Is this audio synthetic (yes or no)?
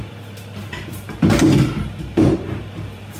yes